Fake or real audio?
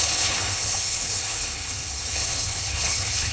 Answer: fake